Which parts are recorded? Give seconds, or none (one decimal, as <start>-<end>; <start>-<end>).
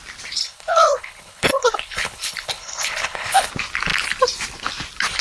0.0-0.4; 3.5-5.2